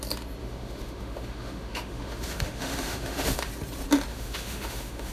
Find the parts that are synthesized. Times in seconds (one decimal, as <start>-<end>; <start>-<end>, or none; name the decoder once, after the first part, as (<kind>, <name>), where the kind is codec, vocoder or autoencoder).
0.4-3.5 (autoencoder, DAC-VAE); 4.1-5.1